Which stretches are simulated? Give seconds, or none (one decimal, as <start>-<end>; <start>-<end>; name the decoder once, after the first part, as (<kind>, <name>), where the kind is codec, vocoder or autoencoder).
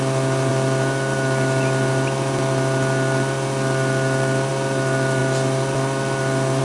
none